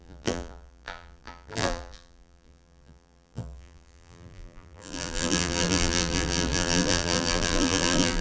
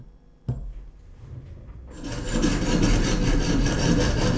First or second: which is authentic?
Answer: second